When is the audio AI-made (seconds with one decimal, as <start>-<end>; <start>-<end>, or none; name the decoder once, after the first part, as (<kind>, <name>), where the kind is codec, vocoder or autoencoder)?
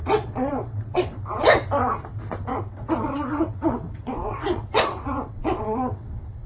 0.0-1.7 (vocoder, WaveNeXt); 2.5-6.5